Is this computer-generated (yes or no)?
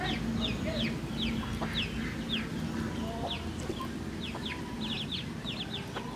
no